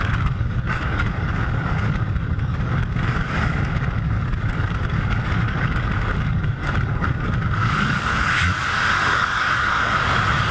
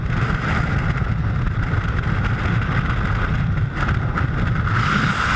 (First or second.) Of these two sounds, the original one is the second